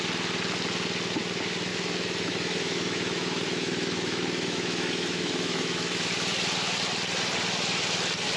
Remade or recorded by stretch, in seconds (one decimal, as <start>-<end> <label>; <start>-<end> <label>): 0.0-1.7 recorded; 1.7-6.1 remade; 6.1-8.4 recorded